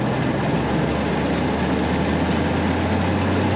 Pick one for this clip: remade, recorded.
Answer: recorded